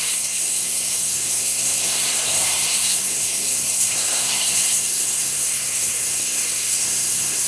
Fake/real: fake